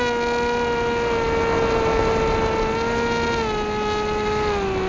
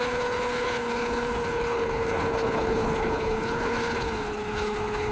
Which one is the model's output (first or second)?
second